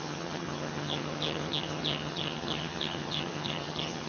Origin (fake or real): fake